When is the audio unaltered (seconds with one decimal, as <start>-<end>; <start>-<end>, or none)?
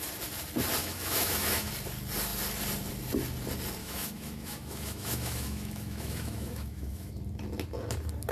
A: 0.0-0.8; 1.7-3.8; 7.1-8.3